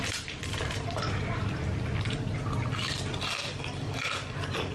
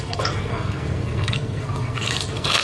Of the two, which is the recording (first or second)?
first